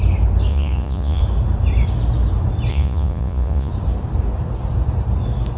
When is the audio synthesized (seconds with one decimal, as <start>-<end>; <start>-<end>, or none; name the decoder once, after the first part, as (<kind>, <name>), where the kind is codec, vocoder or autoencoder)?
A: 0.5-1.2 (vocoder, Vocos); 2.7-3.7